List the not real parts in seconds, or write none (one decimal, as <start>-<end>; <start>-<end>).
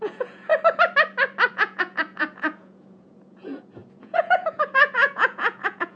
0.0-0.5; 1.5-6.0